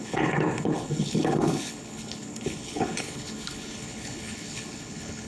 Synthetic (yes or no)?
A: yes